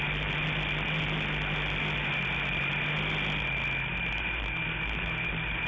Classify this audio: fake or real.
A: real